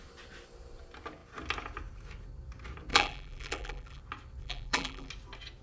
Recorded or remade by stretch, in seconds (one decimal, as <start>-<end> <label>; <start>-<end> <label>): 0.0-2.9 recorded; 2.9-4.0 remade; 4.0-4.4 recorded; 4.4-5.1 remade; 5.1-5.6 recorded